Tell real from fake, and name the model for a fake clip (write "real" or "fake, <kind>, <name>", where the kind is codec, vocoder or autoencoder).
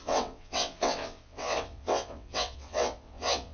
fake, vocoder, WaveNeXt